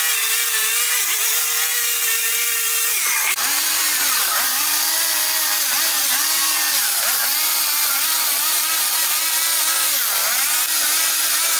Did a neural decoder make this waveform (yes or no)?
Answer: yes